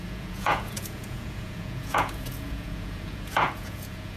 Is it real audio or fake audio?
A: fake